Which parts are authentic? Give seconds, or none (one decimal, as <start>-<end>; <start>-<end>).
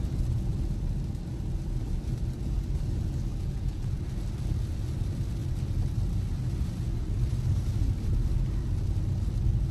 0.0-3.3; 4.0-9.7